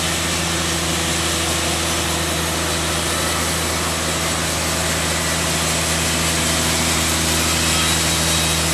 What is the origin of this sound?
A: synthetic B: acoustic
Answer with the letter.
B